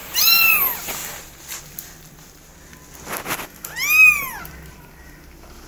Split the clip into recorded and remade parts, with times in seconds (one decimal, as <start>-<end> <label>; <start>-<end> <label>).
0.0-1.0 remade; 1.0-1.6 recorded; 1.6-2.5 remade; 2.5-4.4 recorded; 4.4-5.7 remade